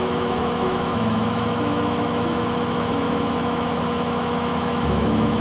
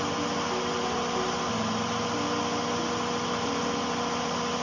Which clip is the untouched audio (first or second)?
second